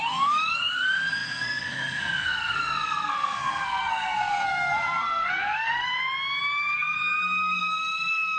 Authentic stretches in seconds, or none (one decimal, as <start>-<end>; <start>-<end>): 5.9-6.7